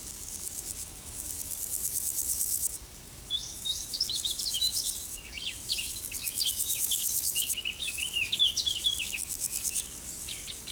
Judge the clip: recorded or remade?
remade